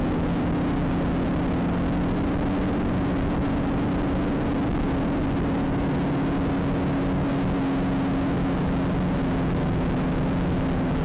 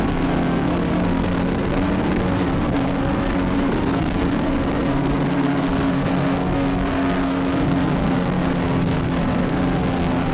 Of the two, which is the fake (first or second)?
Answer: second